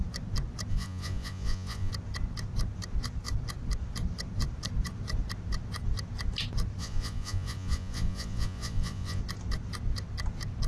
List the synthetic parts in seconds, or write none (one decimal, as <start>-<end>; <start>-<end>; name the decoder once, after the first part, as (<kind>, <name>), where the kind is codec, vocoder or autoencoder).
0.7-1.9 (vocoder, Vocos); 6.8-9.2